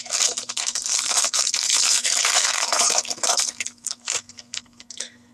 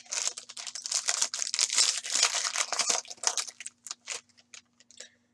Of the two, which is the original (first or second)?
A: second